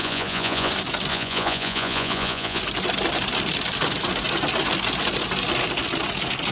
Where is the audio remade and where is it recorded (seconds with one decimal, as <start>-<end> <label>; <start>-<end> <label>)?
0.0-0.7 remade; 0.7-1.1 recorded; 1.1-2.6 remade; 2.6-6.5 recorded